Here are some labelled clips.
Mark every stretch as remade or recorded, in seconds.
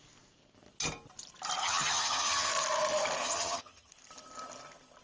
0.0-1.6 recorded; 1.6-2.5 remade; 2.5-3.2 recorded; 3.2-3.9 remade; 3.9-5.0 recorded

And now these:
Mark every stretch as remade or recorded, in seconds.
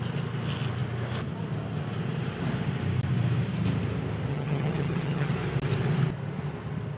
0.0-4.3 recorded; 4.3-5.3 remade; 5.3-7.0 recorded